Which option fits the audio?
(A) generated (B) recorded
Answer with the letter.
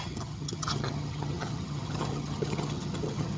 A